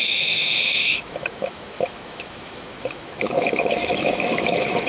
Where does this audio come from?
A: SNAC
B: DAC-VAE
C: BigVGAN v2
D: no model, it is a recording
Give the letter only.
B